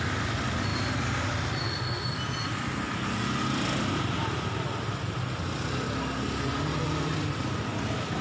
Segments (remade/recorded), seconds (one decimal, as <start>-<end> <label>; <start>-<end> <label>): 0.0-8.2 recorded